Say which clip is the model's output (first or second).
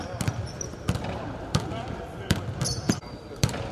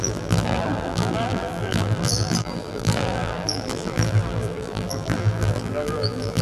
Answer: second